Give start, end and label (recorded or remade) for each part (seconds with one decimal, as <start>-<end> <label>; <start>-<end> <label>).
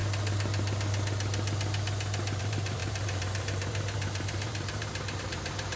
0.0-2.4 recorded; 2.4-5.8 remade